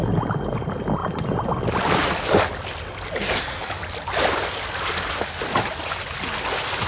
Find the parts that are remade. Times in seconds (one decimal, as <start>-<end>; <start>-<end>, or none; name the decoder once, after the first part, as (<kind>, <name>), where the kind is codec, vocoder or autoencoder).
none